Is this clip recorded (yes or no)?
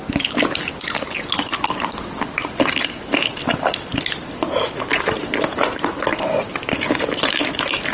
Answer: yes